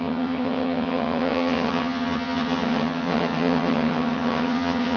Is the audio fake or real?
fake